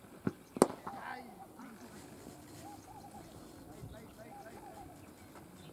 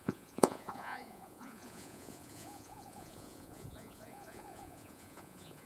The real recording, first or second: first